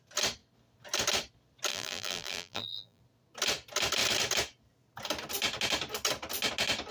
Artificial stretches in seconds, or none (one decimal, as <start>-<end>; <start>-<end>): 1.7-3.0